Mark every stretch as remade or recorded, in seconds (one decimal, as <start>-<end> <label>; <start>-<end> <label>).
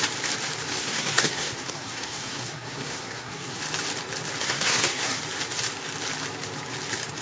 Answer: 0.0-0.8 recorded; 0.8-3.6 remade; 3.6-4.4 recorded; 4.4-5.2 remade; 5.2-7.2 recorded